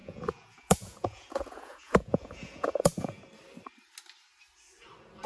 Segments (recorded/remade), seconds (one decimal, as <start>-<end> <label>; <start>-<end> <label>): 0.0-3.2 remade; 3.2-5.3 recorded